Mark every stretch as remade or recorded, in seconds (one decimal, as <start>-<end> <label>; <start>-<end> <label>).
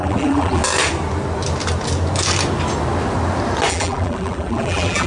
0.0-0.6 remade; 0.6-3.7 recorded; 3.7-5.1 remade